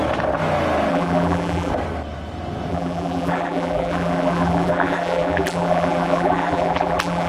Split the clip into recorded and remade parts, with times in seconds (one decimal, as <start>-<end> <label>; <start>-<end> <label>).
0.0-0.9 recorded; 0.9-1.7 remade; 1.7-2.7 recorded; 2.7-7.3 remade